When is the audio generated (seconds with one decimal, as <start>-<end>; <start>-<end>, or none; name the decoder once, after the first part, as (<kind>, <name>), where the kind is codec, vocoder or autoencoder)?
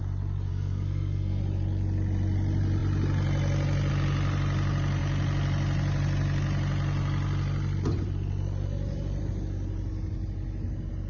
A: 0.5-1.4 (codec, SNAC)